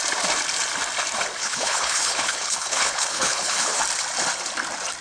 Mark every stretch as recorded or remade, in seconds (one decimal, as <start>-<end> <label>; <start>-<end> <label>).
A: 0.0-1.4 recorded; 1.4-3.8 remade; 3.8-5.0 recorded